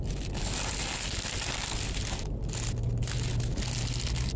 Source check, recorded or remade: recorded